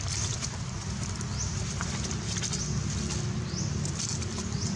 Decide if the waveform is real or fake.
real